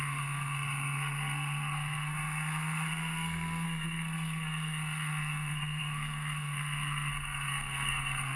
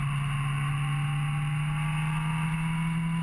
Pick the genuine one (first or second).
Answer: second